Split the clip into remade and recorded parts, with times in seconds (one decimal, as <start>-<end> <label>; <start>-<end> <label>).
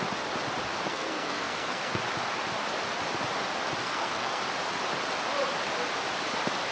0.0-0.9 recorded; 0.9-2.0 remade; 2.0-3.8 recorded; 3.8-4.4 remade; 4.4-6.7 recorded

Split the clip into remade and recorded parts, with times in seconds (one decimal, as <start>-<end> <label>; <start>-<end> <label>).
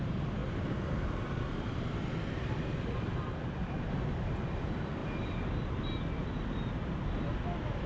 0.0-0.4 recorded; 0.4-3.9 remade; 3.9-5.0 recorded; 5.0-5.6 remade; 5.6-7.9 recorded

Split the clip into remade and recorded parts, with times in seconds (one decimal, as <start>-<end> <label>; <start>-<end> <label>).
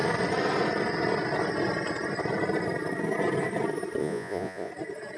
0.0-4.0 recorded; 4.0-4.7 remade; 4.7-5.2 recorded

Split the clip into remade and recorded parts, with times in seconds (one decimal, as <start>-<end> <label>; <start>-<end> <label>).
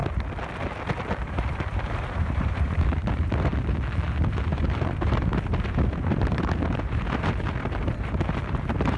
0.0-1.2 recorded; 1.2-3.5 remade; 3.5-4.1 recorded; 4.1-9.0 remade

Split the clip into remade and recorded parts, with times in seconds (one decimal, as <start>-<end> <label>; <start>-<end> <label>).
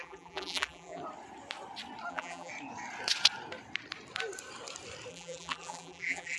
0.0-1.0 remade; 1.0-2.1 recorded; 2.1-2.5 remade; 2.5-5.1 recorded; 5.1-6.4 remade